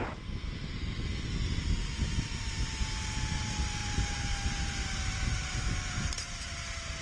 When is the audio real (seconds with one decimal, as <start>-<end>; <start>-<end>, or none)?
0.0-3.8; 6.6-7.0